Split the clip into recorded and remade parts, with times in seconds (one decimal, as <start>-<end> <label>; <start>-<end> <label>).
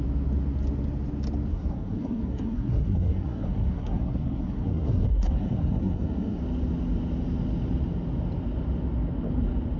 0.0-1.5 recorded; 1.5-6.4 remade; 6.4-9.8 recorded